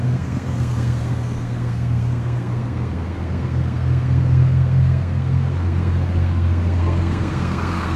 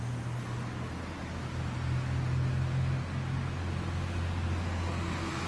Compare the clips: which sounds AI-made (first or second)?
first